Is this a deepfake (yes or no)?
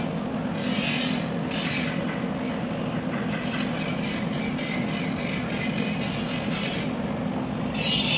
no